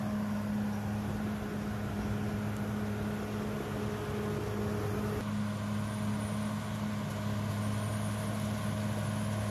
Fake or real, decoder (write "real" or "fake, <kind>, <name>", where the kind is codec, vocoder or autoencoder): real